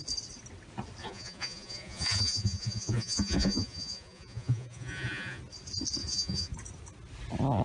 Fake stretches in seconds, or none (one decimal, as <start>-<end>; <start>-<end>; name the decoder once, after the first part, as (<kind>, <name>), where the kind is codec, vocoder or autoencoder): 1.0-5.4 (vocoder, Vocos); 6.0-6.5